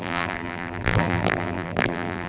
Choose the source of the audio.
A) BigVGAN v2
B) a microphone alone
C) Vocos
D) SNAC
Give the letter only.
A